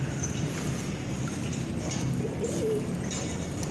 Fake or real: real